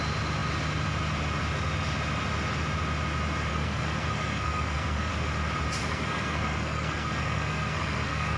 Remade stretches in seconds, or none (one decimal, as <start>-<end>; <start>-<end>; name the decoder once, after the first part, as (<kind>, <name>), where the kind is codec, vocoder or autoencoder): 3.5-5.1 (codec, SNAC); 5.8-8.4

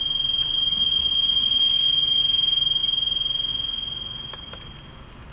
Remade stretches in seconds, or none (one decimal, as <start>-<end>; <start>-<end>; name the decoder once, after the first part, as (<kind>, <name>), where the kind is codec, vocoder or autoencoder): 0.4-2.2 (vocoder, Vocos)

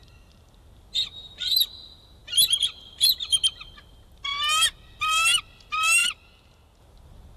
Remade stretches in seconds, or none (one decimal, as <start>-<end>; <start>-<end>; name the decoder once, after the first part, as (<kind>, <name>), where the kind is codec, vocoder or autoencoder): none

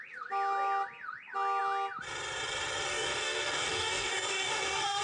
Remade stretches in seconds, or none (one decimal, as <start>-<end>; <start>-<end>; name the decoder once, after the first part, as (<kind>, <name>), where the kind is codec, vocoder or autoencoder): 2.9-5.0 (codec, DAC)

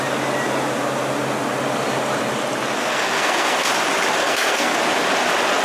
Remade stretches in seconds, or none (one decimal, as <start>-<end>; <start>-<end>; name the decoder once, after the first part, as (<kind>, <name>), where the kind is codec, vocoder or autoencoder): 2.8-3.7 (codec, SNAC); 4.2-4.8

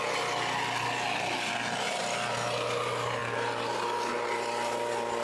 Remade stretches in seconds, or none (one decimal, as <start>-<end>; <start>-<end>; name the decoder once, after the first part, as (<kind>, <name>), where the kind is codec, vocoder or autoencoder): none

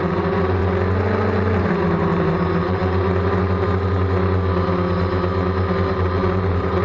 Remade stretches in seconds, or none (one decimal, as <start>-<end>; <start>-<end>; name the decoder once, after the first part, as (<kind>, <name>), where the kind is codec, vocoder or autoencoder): 0.0-0.6 (vocoder, BigVGAN v2); 1.6-2.8; 5.9-6.8